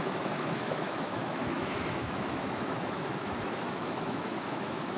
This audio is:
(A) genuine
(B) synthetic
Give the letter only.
B